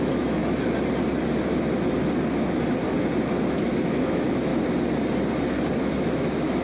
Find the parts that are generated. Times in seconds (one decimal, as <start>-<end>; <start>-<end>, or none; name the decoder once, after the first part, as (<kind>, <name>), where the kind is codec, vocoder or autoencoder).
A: 0.0-0.4 (autoencoder, DAC-VAE); 3.2-4.5; 5.8-6.6